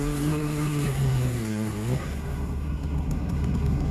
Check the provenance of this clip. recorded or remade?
remade